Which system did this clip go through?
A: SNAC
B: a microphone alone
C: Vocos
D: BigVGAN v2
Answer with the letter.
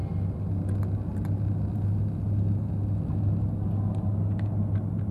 B